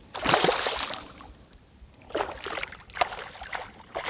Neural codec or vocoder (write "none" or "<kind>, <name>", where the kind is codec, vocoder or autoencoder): none